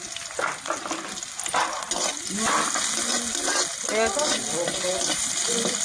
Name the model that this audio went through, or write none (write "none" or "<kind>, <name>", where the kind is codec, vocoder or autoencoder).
none